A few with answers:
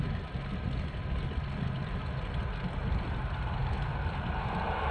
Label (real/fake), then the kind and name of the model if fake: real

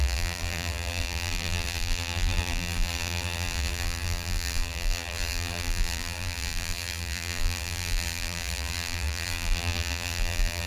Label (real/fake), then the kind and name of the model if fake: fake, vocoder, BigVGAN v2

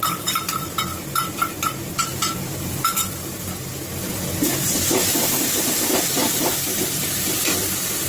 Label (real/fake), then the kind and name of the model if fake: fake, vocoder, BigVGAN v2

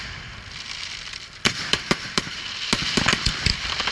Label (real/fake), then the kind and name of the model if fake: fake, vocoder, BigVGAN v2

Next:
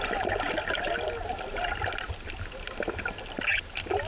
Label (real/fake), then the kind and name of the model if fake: real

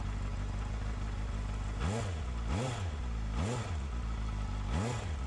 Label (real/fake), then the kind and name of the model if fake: real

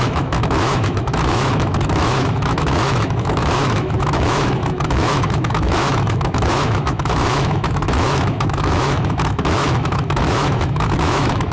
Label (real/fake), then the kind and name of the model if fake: fake, autoencoder, DAC-VAE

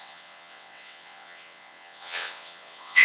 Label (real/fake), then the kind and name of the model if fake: fake, vocoder, WaveNeXt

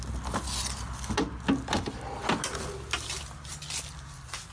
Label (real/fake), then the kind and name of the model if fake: real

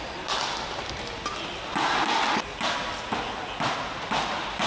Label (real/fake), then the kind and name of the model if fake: real